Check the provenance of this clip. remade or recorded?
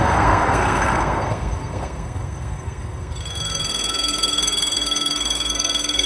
remade